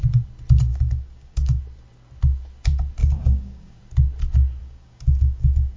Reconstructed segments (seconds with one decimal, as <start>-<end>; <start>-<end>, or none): 0.7-1.6; 3.0-3.8; 4.6-5.8